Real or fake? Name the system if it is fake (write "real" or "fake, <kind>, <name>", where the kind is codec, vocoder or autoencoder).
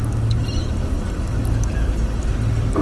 real